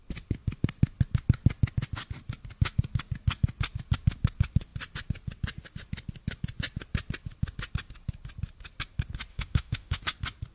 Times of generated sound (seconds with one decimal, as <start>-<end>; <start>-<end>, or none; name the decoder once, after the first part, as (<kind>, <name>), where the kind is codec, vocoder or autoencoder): 9.3-10.0 (autoencoder, DAC-VAE)